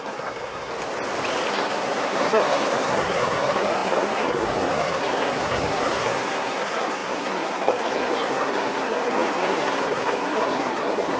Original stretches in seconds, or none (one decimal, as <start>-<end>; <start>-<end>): 0.7-1.5